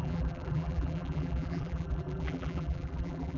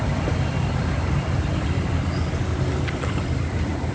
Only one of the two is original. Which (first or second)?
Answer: second